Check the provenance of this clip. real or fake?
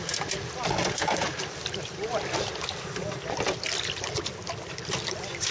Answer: real